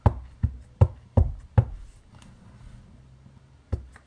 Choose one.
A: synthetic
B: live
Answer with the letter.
B